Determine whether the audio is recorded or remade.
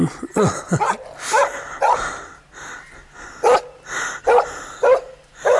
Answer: recorded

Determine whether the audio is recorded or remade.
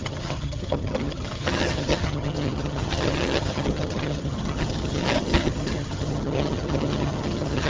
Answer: remade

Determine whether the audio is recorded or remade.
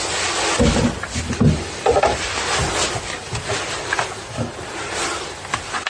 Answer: recorded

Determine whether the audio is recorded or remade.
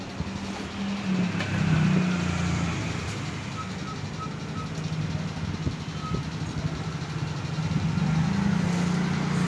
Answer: recorded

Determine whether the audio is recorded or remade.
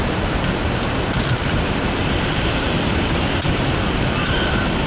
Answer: recorded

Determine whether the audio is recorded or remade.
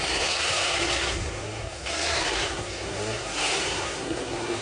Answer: remade